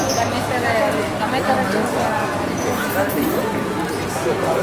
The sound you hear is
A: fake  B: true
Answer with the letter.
A